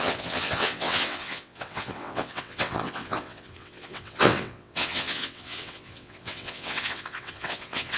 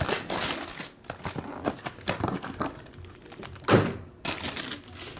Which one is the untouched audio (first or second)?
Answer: second